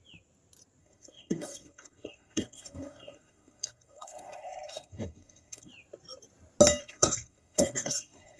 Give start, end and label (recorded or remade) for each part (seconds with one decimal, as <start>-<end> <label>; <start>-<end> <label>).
0.0-0.8 recorded; 0.8-5.7 remade; 5.7-6.8 recorded; 6.8-8.4 remade